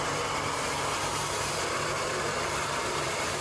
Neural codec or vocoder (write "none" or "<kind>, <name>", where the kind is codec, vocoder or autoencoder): vocoder, BigVGAN v2